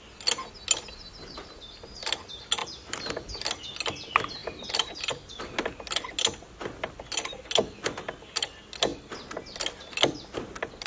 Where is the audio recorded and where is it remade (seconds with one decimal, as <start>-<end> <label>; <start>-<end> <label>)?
0.0-2.6 recorded; 2.6-3.1 remade; 3.1-10.9 recorded